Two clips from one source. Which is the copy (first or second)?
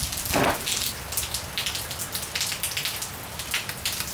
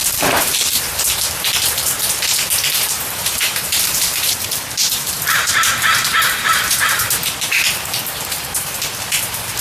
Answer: second